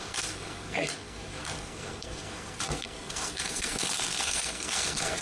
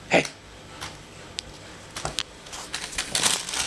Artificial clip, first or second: first